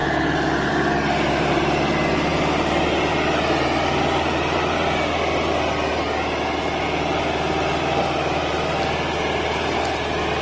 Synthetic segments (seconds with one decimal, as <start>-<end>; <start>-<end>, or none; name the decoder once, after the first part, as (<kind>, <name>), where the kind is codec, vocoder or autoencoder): none